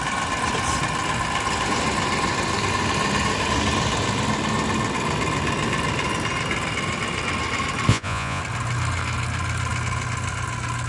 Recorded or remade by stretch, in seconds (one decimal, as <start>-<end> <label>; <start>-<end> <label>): 0.0-7.9 recorded; 7.9-8.4 remade; 8.4-10.9 recorded